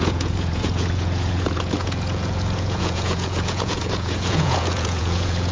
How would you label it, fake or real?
fake